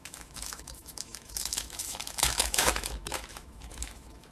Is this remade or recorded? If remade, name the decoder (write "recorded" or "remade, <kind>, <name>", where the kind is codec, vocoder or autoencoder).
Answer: remade, autoencoder, DAC-VAE